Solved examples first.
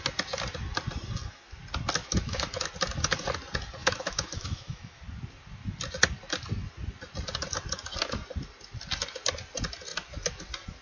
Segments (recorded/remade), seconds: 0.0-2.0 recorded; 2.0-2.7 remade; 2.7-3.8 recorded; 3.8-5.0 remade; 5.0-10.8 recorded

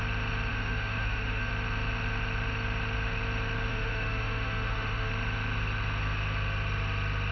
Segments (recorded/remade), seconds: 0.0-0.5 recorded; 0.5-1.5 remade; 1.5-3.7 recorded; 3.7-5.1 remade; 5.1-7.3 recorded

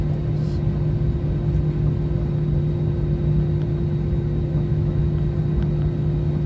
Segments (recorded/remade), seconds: 0.0-4.5 recorded; 4.5-5.0 remade; 5.0-6.5 recorded

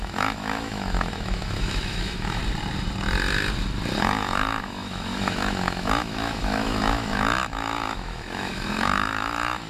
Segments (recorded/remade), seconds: 0.0-2.4 remade; 2.4-4.0 recorded; 4.0-9.7 remade

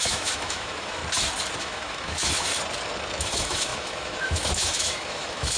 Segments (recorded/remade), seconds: 0.0-1.0 remade; 1.0-1.6 recorded; 1.6-2.5 remade; 2.5-3.2 recorded; 3.2-5.6 remade

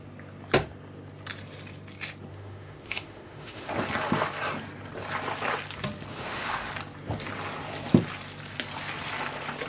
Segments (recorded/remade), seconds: 0.0-2.3 recorded; 2.3-3.7 remade; 3.7-6.1 recorded; 6.1-6.7 remade; 6.7-9.7 recorded

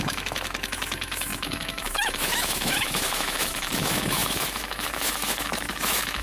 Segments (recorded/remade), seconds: 0.0-6.2 remade